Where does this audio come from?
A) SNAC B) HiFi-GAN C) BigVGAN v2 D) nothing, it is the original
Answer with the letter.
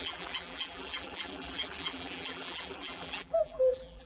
C